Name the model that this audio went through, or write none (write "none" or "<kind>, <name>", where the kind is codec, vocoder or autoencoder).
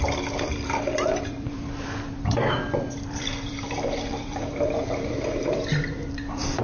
vocoder, BigVGAN v2